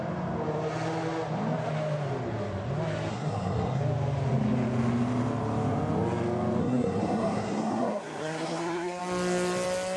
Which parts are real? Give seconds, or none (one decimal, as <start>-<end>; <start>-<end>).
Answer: 0.0-3.1; 3.8-6.6; 9.0-10.0